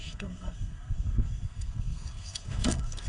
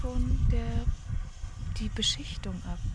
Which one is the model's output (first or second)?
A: first